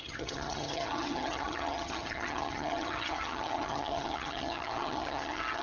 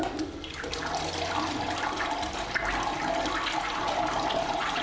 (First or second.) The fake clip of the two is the first